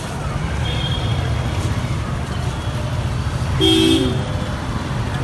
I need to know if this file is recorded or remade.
recorded